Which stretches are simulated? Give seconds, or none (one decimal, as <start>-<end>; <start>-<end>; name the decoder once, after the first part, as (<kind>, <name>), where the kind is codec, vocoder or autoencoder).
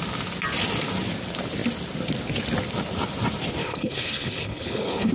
3.6-5.1 (codec, HILCodec)